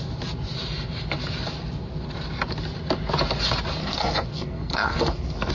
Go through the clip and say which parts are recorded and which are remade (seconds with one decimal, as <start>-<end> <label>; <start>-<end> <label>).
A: 0.0-3.8 recorded; 3.8-5.5 remade